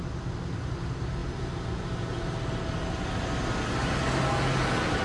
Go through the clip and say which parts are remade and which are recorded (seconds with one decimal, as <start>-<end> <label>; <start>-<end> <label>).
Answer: 0.0-5.0 recorded